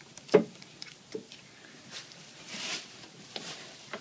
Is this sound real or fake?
fake